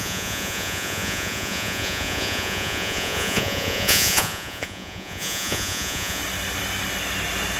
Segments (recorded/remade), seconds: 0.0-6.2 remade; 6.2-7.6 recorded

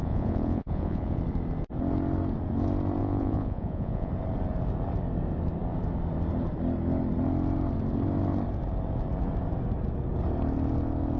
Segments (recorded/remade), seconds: 0.0-1.2 remade; 1.2-3.0 recorded; 3.0-4.1 remade; 4.1-11.2 recorded

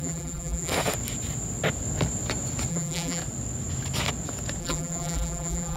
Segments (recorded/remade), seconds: 0.0-0.7 remade; 0.7-2.7 recorded; 2.7-3.2 remade; 3.2-4.6 recorded; 4.6-5.8 remade